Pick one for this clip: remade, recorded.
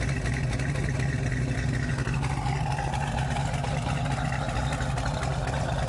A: recorded